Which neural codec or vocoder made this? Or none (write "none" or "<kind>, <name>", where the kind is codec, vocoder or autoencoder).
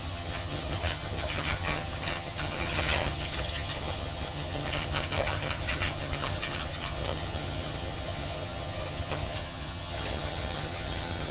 vocoder, HiFi-GAN